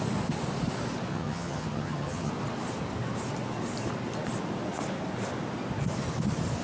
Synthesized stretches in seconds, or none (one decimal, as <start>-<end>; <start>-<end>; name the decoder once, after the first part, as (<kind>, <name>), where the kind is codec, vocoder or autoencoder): 1.1-2.3 (vocoder, HiFi-GAN)